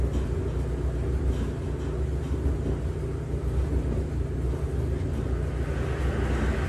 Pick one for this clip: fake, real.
real